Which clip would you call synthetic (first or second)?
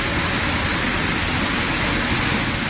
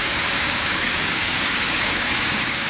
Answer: second